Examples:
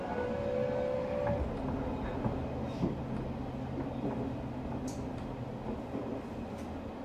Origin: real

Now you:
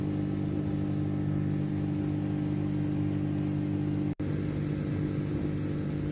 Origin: real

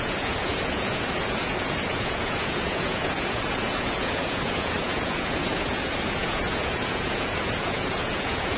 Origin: fake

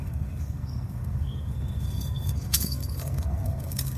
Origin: fake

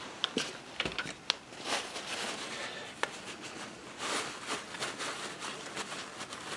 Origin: real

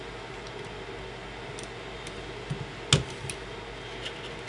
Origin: real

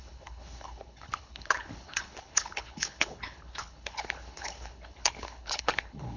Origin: fake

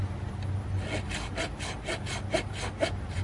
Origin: real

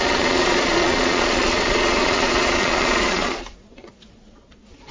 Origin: fake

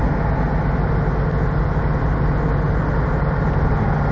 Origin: real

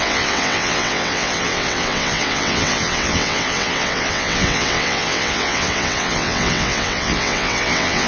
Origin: fake